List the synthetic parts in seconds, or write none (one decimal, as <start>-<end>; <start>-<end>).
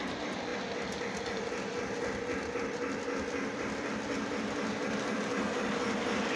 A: none